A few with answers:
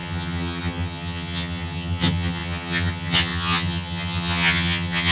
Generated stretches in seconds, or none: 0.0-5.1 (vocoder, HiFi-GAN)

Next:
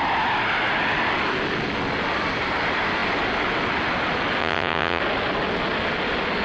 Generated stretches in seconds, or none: 4.4-5.0 (vocoder, HiFi-GAN)

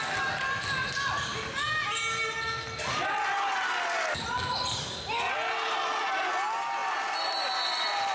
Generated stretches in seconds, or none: none

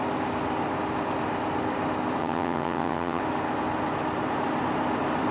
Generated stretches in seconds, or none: 2.2-3.2 (vocoder, HiFi-GAN)

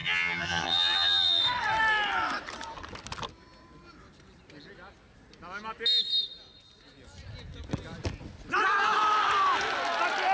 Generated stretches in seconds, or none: 0.0-1.4 (vocoder, HiFi-GAN)

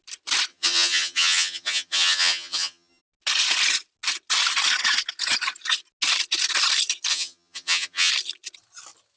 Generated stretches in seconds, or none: 0.5-3.0 (vocoder, HiFi-GAN); 7.1-8.1

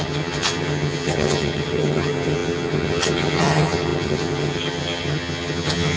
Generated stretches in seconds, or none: 0.0-6.0 (vocoder, HiFi-GAN)